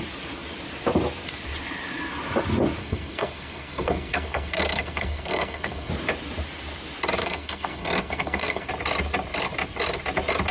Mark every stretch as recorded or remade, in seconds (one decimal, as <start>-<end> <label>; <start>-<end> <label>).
0.0-2.8 recorded; 2.8-5.9 remade; 5.9-7.2 recorded; 7.2-8.7 remade; 8.7-10.5 recorded